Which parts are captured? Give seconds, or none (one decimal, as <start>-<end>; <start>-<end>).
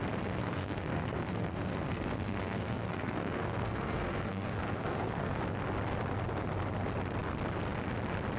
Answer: 0.0-0.4; 5.4-8.4